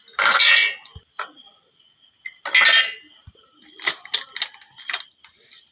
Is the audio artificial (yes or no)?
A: no